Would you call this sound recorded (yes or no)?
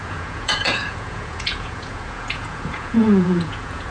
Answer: no